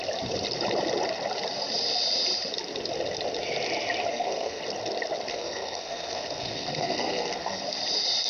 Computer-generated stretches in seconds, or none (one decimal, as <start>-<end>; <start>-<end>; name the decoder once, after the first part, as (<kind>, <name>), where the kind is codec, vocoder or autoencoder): 4.1-4.6 (codec, SNAC); 5.3-7.6